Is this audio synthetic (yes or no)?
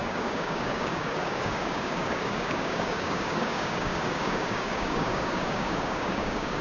yes